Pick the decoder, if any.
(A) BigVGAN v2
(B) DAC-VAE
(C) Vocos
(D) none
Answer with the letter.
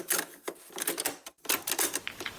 D